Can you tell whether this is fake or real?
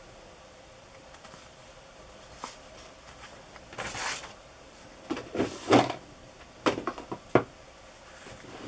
fake